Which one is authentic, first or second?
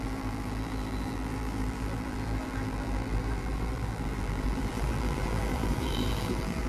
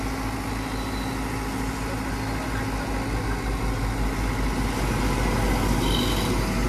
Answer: second